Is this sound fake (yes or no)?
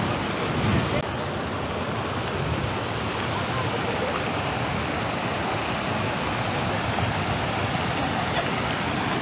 no